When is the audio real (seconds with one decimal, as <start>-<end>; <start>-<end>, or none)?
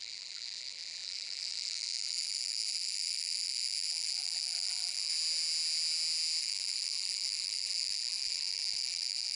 5.1-6.4